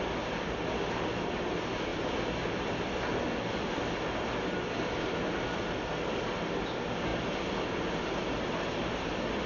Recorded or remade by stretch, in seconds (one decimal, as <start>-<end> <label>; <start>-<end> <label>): 0.0-9.5 recorded